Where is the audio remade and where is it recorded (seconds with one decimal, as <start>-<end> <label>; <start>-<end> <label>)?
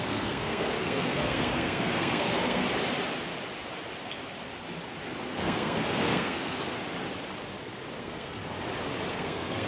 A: 0.0-2.6 remade; 2.6-5.3 recorded; 5.3-6.7 remade; 6.7-8.0 recorded; 8.0-8.4 remade; 8.4-9.1 recorded; 9.1-9.7 remade